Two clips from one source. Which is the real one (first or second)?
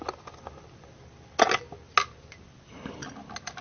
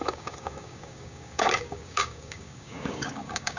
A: first